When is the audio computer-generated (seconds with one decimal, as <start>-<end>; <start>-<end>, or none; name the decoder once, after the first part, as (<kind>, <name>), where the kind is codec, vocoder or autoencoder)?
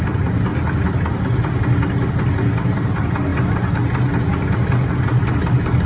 none